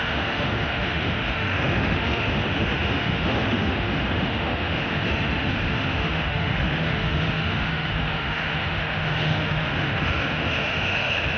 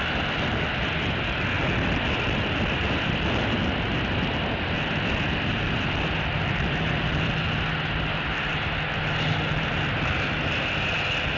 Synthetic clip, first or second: first